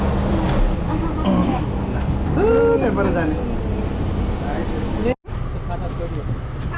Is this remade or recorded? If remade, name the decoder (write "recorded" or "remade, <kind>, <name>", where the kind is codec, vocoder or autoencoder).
recorded